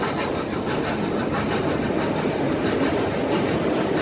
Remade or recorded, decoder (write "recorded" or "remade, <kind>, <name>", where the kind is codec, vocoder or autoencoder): recorded